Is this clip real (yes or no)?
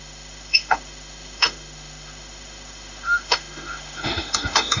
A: no